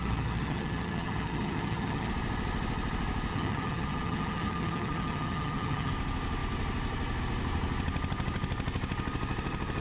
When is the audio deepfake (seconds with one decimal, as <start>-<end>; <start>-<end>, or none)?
0.0-2.1; 3.3-5.9